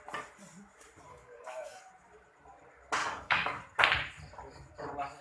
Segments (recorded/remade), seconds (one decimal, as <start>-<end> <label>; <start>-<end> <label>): 0.0-1.1 recorded; 1.1-1.9 remade; 1.9-3.0 recorded; 3.0-3.6 remade; 3.6-5.2 recorded

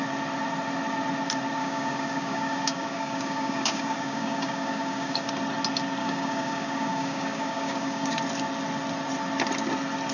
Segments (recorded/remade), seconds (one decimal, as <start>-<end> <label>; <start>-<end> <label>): 0.0-1.6 recorded; 1.6-5.3 remade; 5.3-6.0 recorded; 6.0-8.2 remade; 8.2-10.1 recorded

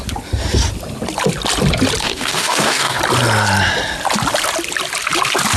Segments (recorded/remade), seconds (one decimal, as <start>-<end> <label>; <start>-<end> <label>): 0.0-2.0 recorded; 2.0-3.0 remade; 3.0-5.6 recorded

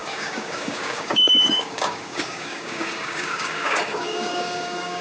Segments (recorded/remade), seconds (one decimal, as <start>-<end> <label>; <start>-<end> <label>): 0.0-5.0 remade

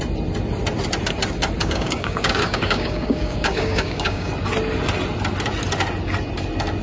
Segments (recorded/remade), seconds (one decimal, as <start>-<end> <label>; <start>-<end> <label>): 0.0-1.6 recorded; 1.6-4.3 remade; 4.3-6.8 recorded